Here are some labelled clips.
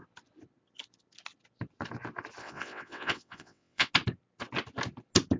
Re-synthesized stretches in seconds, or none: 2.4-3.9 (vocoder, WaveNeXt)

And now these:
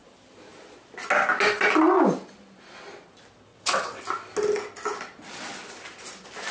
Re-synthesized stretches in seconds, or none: 3.5-4.0 (vocoder, WaveNeXt)

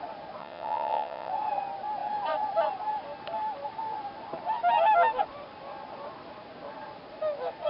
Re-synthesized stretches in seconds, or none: 0.4-1.3 (vocoder, WaveNeXt)

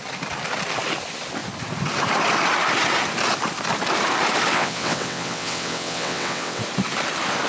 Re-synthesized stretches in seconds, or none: 4.5-6.6 (vocoder, WaveNeXt)

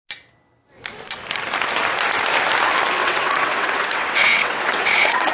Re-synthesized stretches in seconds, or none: 3.0-5.3 (vocoder, WaveNeXt)

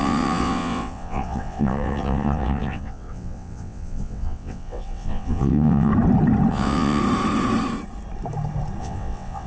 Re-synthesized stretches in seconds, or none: 0.0-5.9 (vocoder, WaveNeXt); 6.5-7.0; 8.8-9.5